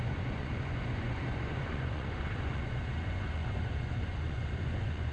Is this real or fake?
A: fake